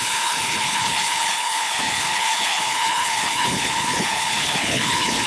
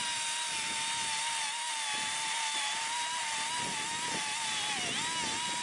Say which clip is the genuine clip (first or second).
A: second